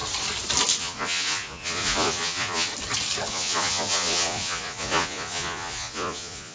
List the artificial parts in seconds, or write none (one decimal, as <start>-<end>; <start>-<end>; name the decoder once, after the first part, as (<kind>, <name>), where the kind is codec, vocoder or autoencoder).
0.8-2.7 (vocoder, Vocos); 3.3-6.5

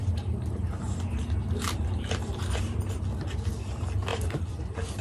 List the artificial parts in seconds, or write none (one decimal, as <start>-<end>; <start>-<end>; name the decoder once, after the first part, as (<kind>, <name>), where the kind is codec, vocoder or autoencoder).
0.0-3.0 (vocoder, BigVGAN v2); 4.1-5.0

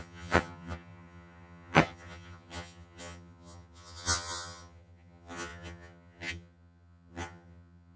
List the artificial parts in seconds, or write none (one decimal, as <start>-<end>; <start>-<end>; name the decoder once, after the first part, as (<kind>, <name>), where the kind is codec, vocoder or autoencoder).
0.0-8.0 (vocoder, HiFi-GAN)

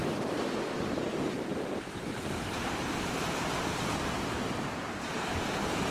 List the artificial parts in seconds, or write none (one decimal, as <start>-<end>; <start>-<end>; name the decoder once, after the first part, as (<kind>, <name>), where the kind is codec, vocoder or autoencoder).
0.0-5.9 (vocoder, BigVGAN v2)

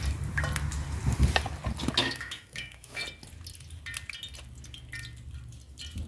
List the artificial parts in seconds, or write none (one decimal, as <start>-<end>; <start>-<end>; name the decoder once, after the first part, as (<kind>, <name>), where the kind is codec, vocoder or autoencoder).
2.0-3.0 (autoencoder, DAC-VAE)

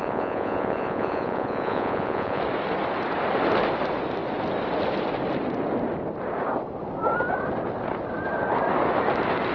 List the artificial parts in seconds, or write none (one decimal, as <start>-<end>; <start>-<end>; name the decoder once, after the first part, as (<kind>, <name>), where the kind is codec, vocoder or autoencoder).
0.0-2.4 (vocoder, Vocos)